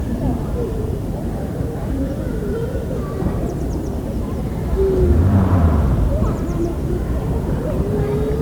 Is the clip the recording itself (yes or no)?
no